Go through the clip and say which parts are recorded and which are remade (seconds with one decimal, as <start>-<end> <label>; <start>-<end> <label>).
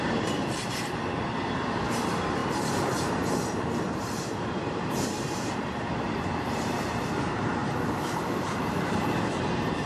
0.0-9.9 remade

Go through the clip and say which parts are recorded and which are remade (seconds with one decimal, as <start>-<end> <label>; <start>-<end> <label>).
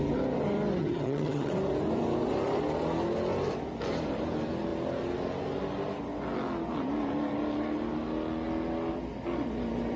0.0-0.8 recorded; 0.8-1.5 remade; 1.5-10.0 recorded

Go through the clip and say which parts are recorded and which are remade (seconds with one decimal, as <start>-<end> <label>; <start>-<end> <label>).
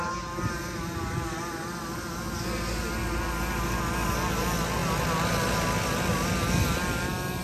0.0-7.4 recorded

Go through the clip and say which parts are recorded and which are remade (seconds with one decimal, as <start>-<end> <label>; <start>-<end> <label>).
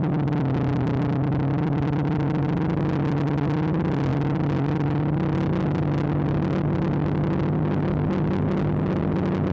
0.0-4.1 recorded; 4.1-5.6 remade; 5.6-9.5 recorded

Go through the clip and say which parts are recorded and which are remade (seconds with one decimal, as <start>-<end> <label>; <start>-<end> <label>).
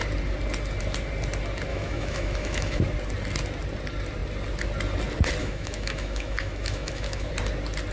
0.0-1.7 recorded; 1.7-2.8 remade; 2.8-5.4 recorded; 5.4-7.3 remade; 7.3-7.9 recorded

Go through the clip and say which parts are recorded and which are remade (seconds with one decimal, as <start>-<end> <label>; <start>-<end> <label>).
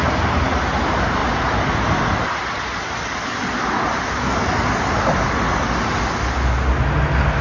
0.0-7.4 recorded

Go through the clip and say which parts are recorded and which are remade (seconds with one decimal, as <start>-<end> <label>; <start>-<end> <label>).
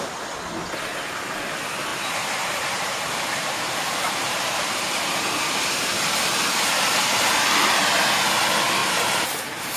0.0-1.9 recorded; 1.9-5.7 remade; 5.7-6.4 recorded; 6.4-7.4 remade; 7.4-8.8 recorded; 8.8-9.8 remade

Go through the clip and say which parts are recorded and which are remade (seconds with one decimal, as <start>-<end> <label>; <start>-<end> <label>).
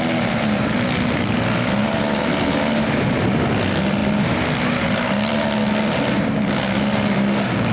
0.0-7.7 recorded